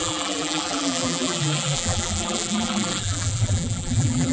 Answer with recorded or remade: remade